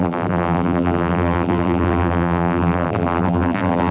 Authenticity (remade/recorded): remade